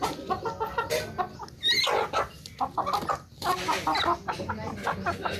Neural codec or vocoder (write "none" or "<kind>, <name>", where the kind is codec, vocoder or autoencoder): none